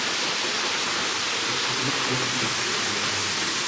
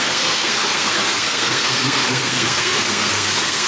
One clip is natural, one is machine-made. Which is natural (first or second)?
first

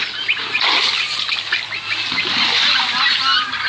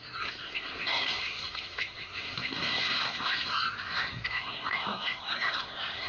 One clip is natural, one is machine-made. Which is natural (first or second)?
first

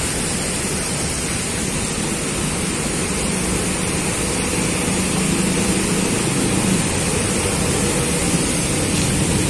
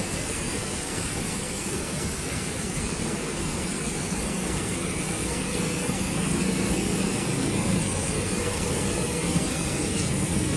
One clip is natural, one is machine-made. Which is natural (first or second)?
first